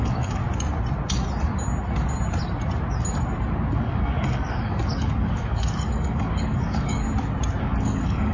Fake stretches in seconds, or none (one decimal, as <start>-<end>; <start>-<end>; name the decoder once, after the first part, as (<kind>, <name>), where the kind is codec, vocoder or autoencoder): 0.0-0.4 (codec, DAC); 3.7-7.0; 7.6-8.3